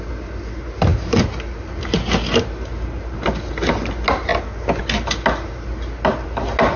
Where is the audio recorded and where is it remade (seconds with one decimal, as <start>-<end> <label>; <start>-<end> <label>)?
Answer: 0.0-6.8 recorded